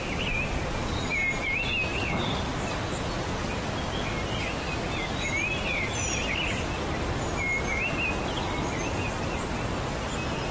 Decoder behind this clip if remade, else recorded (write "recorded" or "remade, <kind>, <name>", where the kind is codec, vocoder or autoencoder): recorded